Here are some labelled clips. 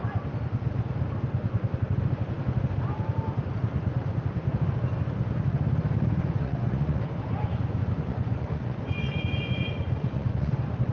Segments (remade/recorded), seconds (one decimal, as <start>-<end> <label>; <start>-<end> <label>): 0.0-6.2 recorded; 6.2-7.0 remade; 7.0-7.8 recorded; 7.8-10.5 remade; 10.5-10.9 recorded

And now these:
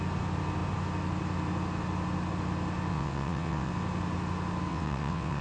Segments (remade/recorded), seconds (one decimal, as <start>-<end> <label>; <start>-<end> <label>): 0.0-2.9 recorded; 2.9-3.7 remade; 3.7-4.7 recorded; 4.7-5.4 remade

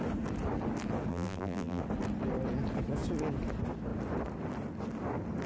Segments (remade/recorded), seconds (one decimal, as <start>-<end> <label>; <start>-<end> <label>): 0.0-1.1 recorded; 1.1-1.8 remade; 1.8-5.5 recorded

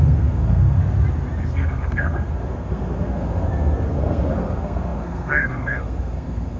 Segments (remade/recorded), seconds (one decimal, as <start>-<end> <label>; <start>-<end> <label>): 0.0-0.8 remade; 0.8-1.5 recorded; 1.5-6.6 remade